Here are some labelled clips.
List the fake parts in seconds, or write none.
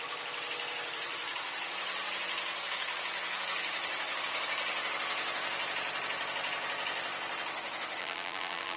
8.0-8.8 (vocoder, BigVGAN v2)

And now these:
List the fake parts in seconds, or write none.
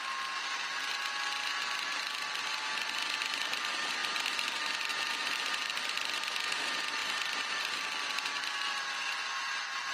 7.0-7.7 (vocoder, BigVGAN v2)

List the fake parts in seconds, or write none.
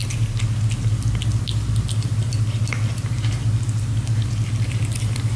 none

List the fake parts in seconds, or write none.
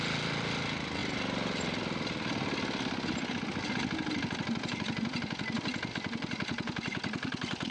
5.9-7.7 (vocoder, BigVGAN v2)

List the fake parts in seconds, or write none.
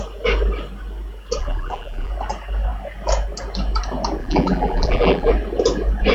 1.4-2.1 (vocoder, BigVGAN v2); 4.2-5.3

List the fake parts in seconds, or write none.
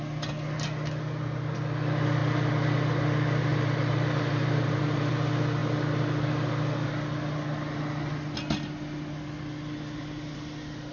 3.5-5.1 (vocoder, BigVGAN v2)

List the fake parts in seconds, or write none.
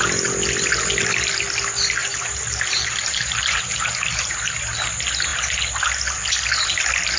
2.0-4.3 (vocoder, BigVGAN v2)